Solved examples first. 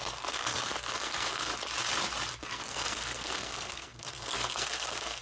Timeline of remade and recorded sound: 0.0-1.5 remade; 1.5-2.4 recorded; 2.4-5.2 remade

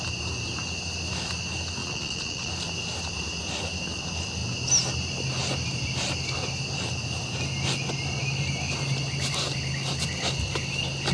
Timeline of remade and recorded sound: 0.0-1.8 recorded; 1.8-2.5 remade; 2.5-11.1 recorded

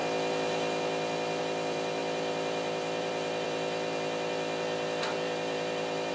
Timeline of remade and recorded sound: 0.0-1.4 recorded; 1.4-6.1 remade

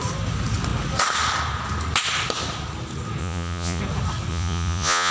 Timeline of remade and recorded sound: 0.0-3.2 recorded; 3.2-3.8 remade; 3.8-4.3 recorded; 4.3-5.1 remade

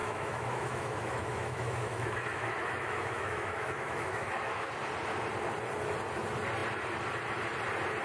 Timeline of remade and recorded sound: 0.0-4.7 remade; 4.7-8.0 recorded

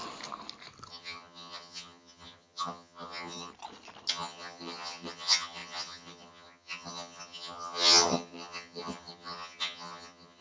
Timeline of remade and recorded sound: 0.0-0.9 recorded; 0.9-3.5 remade; 3.5-4.1 recorded; 4.1-10.4 remade

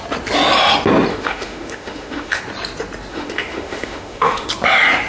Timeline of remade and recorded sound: 0.0-1.1 recorded; 1.1-2.4 remade; 2.4-3.1 recorded; 3.1-4.5 remade; 4.5-5.1 recorded